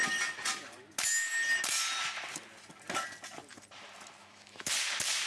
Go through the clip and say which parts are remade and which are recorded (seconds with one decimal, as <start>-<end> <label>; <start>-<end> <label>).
0.0-4.2 recorded; 4.2-4.7 remade; 4.7-5.3 recorded